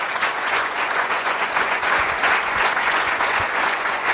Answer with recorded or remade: remade